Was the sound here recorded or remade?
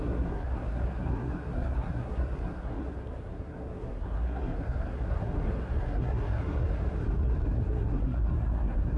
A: remade